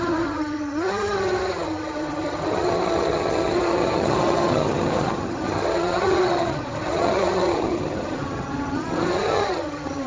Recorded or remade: remade